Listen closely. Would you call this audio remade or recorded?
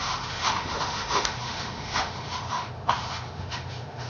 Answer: remade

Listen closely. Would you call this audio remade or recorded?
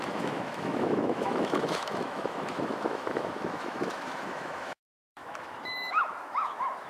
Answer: remade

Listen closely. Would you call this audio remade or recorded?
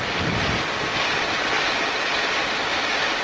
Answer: recorded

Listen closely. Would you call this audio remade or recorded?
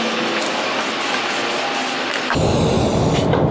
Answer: recorded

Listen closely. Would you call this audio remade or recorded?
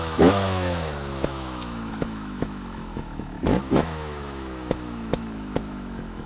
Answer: remade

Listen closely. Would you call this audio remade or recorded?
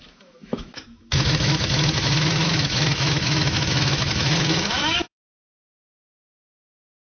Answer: remade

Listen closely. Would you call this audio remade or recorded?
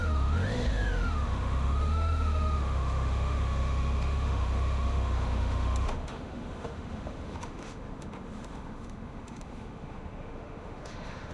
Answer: remade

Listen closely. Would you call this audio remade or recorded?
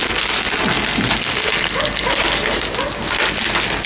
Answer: recorded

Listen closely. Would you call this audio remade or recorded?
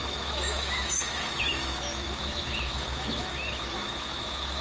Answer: remade